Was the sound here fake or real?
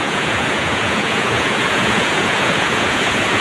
fake